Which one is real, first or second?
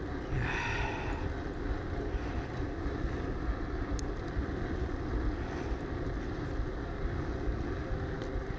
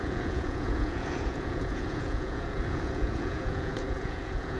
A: first